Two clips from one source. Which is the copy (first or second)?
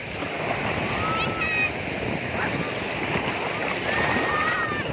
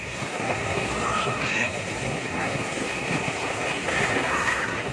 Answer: second